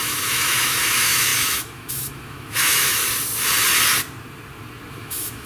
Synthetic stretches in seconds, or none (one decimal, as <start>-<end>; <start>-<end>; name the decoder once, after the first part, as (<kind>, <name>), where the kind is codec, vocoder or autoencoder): 0.0-3.0 (autoencoder, DAC-VAE); 4.9-5.5